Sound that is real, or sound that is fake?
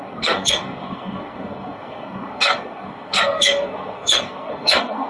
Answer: fake